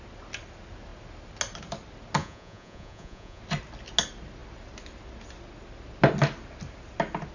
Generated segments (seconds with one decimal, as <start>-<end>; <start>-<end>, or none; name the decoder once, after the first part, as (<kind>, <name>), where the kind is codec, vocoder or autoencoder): 2.2-3.4 (vocoder, Vocos)

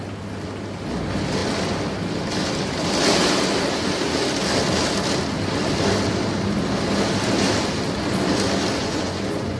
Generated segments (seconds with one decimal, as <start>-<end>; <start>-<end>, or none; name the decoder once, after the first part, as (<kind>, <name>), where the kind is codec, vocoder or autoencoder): 8.8-9.6 (vocoder, Vocos)

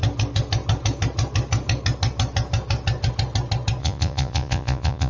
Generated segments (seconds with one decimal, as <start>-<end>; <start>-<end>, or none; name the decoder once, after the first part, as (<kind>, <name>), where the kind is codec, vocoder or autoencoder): 3.8-5.1 (vocoder, Vocos)

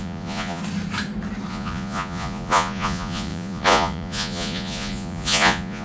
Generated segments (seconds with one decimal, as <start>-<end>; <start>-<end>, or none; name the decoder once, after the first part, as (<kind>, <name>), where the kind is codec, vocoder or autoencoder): 0.0-0.6 (vocoder, Vocos); 1.5-5.8

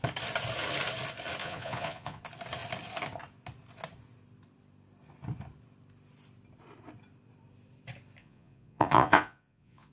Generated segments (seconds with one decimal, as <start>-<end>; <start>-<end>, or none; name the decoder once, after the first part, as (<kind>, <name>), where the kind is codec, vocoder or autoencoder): 1.4-2.2 (vocoder, Vocos); 8.2-9.9

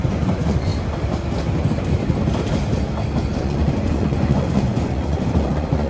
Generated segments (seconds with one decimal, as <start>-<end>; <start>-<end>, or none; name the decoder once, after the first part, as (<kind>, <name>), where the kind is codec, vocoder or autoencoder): 0.0-0.7 (vocoder, Vocos); 3.4-5.9

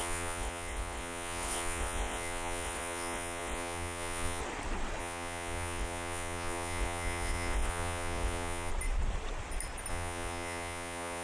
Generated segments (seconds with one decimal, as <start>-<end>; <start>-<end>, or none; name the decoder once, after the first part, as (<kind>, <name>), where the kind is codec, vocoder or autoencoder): 0.0-4.4 (vocoder, Vocos); 5.0-8.7; 9.9-11.2

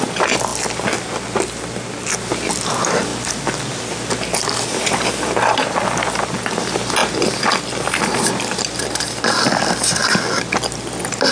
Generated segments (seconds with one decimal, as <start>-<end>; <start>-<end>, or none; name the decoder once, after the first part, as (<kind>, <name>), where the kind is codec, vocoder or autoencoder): none